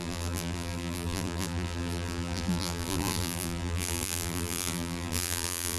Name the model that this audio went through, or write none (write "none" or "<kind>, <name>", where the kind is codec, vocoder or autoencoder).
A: vocoder, BigVGAN v2